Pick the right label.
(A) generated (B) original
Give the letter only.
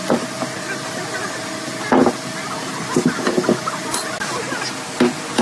B